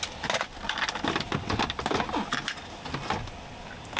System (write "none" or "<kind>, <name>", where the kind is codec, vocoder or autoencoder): none